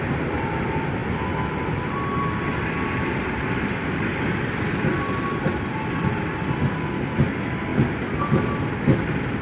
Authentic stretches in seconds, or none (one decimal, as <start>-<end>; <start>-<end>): 0.0-9.4